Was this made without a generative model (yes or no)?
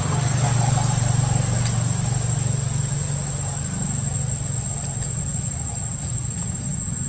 yes